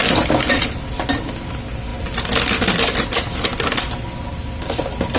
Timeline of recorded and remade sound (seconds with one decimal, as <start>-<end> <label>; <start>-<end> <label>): 0.0-5.2 recorded